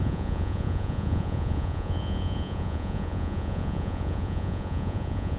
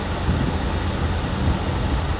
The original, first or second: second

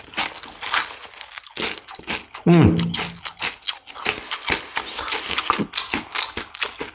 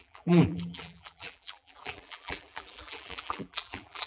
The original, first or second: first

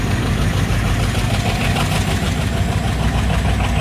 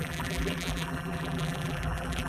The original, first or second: first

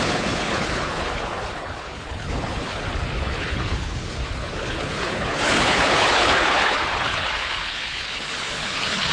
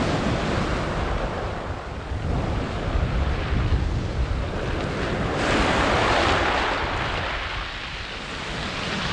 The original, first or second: second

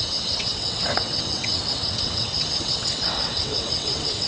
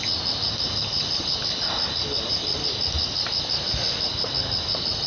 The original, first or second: second